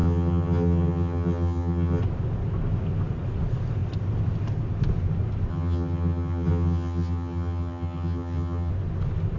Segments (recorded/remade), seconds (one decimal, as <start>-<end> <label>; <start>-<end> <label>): 0.0-2.0 remade; 2.0-5.5 recorded; 5.5-8.7 remade; 8.7-9.4 recorded